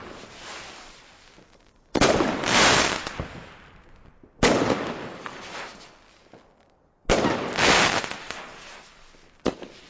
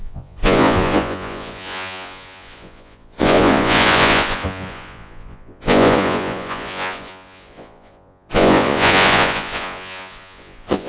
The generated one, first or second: second